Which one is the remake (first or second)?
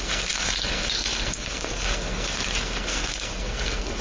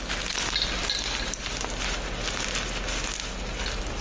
first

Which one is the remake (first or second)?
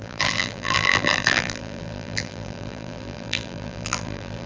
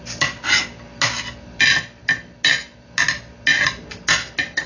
first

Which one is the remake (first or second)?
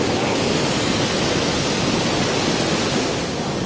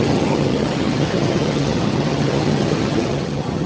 second